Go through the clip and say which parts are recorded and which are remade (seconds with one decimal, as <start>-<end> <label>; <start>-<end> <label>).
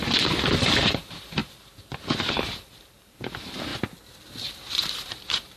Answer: 0.0-1.4 remade; 1.4-2.3 recorded; 2.3-3.7 remade; 3.7-4.5 recorded; 4.5-5.6 remade